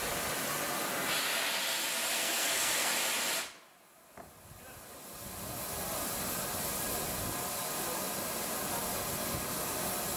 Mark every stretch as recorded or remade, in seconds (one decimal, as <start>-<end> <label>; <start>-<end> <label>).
0.0-2.1 recorded; 2.1-2.9 remade; 2.9-10.2 recorded